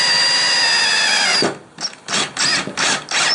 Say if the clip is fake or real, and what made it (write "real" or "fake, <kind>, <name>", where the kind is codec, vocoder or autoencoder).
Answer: real